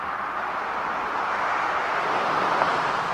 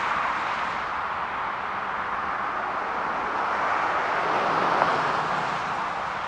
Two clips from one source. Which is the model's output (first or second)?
first